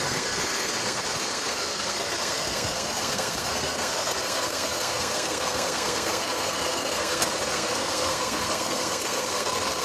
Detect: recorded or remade remade